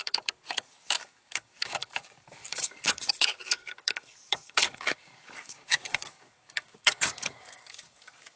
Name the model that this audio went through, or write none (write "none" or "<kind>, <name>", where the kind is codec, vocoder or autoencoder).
codec, DAC